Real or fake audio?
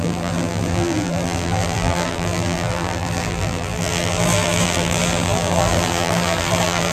fake